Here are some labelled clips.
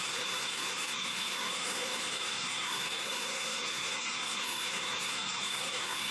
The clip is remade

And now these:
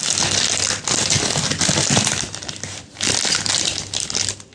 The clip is recorded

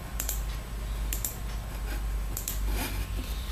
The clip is recorded